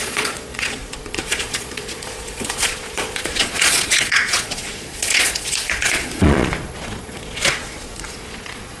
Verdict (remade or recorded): remade